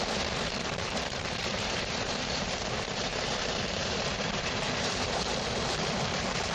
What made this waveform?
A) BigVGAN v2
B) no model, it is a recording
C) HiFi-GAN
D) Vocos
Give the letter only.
A